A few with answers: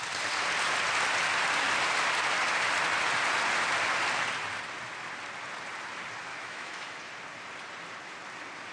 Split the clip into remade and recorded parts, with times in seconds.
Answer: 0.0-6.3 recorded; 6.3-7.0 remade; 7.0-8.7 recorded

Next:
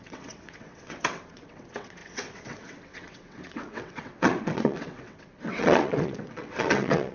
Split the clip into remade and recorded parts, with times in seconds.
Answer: 0.0-7.1 remade

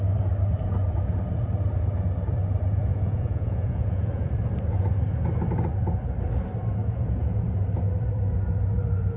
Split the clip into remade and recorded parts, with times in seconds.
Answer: 0.0-2.9 recorded; 2.9-4.3 remade; 4.3-6.8 recorded; 6.8-7.4 remade; 7.4-9.2 recorded

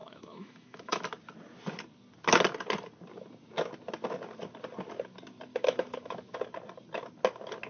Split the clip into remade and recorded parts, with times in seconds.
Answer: 0.0-1.0 remade; 1.0-5.5 recorded; 5.5-6.4 remade; 6.4-7.7 recorded

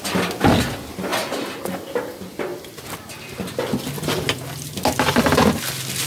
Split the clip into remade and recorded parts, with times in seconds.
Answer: 0.0-6.1 recorded

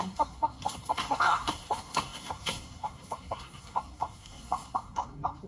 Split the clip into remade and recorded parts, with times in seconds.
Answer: 0.0-5.5 remade

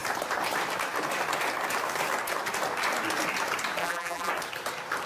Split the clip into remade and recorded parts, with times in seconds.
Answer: 0.0-3.8 recorded; 3.8-4.3 remade; 4.3-5.1 recorded